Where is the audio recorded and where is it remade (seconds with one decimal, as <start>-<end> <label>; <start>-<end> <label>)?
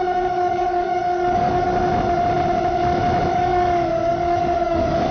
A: 0.0-1.7 remade; 1.7-3.3 recorded; 3.3-5.1 remade